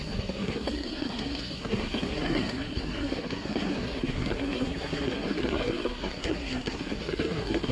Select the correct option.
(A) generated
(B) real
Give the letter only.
A